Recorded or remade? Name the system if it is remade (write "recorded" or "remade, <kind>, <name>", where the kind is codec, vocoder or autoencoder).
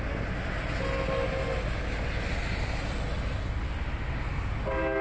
recorded